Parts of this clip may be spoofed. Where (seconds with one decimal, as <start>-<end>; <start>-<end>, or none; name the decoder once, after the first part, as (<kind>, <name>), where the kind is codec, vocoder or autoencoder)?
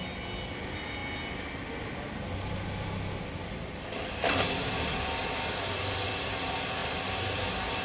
none